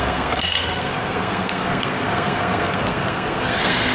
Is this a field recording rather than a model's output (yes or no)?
no